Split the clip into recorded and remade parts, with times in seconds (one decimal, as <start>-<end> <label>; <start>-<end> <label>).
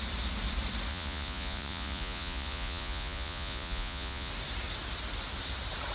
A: 0.0-0.9 recorded; 0.9-4.3 remade; 4.3-5.9 recorded